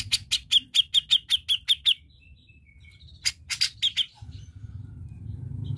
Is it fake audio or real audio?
real